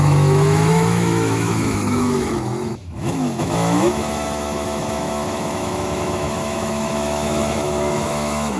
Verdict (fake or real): fake